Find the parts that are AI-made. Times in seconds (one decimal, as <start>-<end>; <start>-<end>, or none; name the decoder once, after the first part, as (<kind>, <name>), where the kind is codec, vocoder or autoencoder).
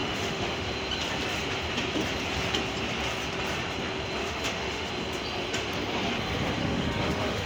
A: 0.0-0.7 (autoencoder, DAC-VAE); 4.2-4.9; 6.6-7.5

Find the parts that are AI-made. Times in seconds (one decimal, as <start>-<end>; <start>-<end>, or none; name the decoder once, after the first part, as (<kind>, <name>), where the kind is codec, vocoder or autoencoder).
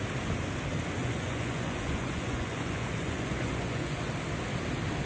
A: 1.0-4.1 (vocoder, Vocos)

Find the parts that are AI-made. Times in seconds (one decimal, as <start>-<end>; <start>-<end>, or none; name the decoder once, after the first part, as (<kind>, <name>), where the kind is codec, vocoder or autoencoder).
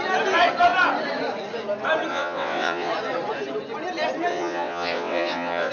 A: 2.1-2.9 (vocoder, WaveNeXt); 4.3-5.7